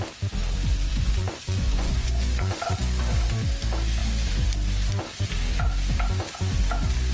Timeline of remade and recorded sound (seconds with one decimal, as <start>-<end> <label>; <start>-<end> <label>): 0.0-0.9 recorded; 0.9-2.6 remade; 2.6-7.1 recorded